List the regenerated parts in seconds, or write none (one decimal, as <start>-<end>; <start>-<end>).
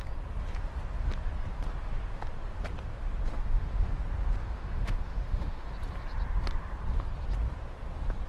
3.3-4.0; 4.4-5.7